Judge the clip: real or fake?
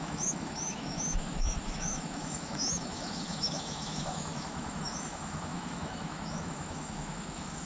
fake